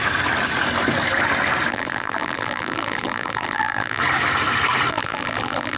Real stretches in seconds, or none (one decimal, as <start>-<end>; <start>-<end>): 0.0-1.7; 4.0-4.9